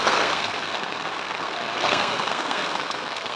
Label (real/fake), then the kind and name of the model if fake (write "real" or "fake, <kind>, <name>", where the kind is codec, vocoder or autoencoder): fake, codec, SNAC